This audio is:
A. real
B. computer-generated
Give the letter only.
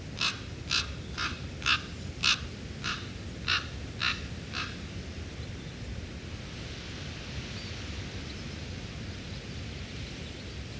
A